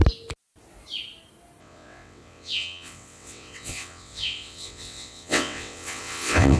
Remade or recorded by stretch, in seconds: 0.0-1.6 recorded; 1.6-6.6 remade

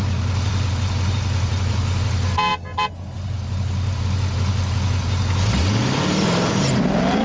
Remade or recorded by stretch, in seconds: 0.0-7.2 recorded

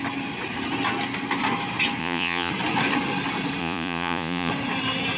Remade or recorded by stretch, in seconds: 0.0-2.0 recorded; 2.0-2.5 remade; 2.5-3.6 recorded; 3.6-4.5 remade; 4.5-5.2 recorded